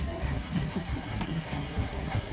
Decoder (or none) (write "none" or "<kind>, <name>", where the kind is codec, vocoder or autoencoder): codec, SNAC